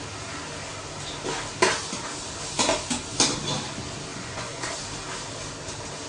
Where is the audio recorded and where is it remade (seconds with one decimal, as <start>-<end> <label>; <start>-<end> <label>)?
0.0-4.1 recorded; 4.1-4.7 remade; 4.7-6.1 recorded